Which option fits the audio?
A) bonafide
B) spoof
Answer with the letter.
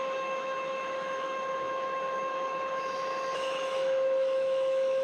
B